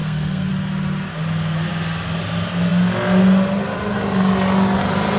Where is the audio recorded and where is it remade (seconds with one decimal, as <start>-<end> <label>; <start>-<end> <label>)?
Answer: 0.0-0.5 remade; 0.5-5.2 recorded

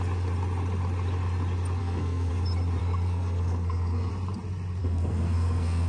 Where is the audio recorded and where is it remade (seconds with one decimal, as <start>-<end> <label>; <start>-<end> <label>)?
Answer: 0.0-1.8 recorded; 1.8-2.3 remade; 2.3-2.8 recorded; 2.8-4.1 remade; 4.1-4.8 recorded; 4.8-5.9 remade

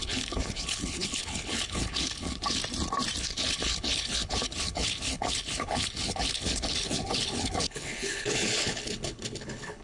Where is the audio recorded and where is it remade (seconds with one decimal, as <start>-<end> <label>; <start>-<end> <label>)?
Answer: 0.0-2.6 remade; 2.6-3.2 recorded; 3.2-9.8 remade

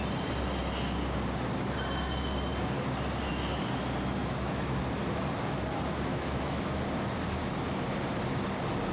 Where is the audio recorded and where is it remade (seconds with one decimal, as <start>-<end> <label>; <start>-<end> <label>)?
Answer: 0.0-4.2 recorded; 4.2-4.8 remade; 4.8-6.1 recorded; 6.1-6.8 remade; 6.8-8.9 recorded